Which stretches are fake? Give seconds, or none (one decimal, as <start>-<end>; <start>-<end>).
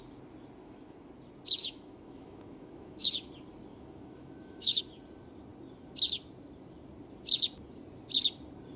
0.6-1.1; 1.6-3.3; 3.7-4.8